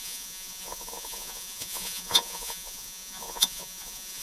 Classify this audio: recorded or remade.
remade